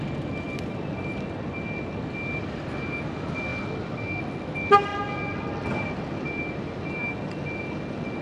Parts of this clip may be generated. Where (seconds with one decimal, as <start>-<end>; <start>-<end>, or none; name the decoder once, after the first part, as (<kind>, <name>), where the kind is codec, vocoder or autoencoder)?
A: none